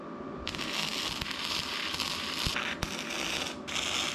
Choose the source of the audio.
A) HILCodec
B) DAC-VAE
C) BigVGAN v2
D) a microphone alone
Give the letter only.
D